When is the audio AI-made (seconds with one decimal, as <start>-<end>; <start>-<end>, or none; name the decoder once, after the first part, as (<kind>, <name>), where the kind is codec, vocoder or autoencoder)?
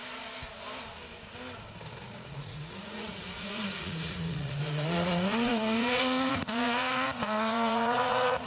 2.0-8.5 (vocoder, Vocos)